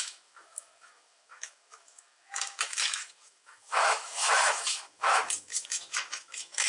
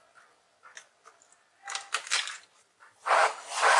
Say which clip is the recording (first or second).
second